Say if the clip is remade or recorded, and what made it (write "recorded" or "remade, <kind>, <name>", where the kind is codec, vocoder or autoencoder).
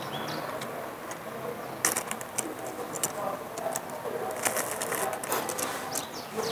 recorded